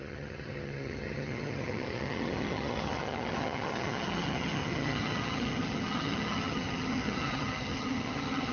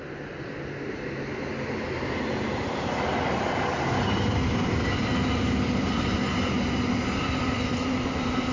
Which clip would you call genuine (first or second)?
second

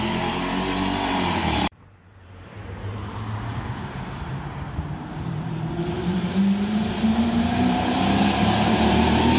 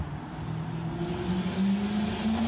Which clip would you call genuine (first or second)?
second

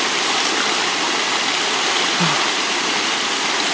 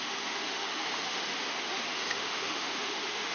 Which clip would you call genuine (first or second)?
first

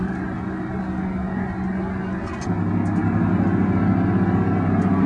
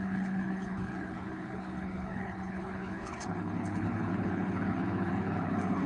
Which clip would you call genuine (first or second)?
first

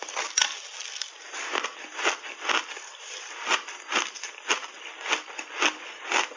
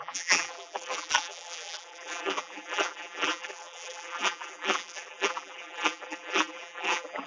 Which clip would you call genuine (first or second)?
first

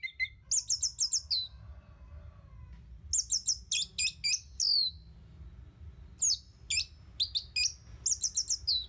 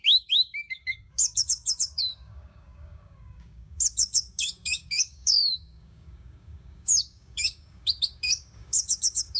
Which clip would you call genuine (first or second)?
first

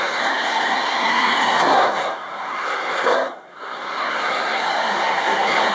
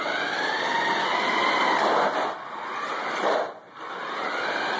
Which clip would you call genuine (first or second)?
second